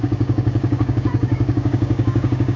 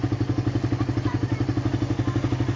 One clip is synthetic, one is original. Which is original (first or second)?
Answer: second